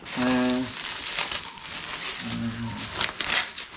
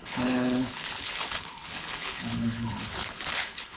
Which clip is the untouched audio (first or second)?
first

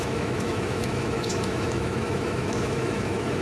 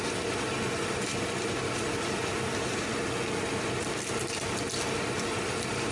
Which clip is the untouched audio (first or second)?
second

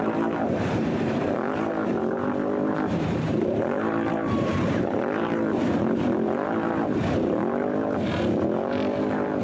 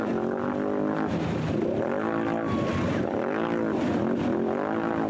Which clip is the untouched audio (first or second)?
second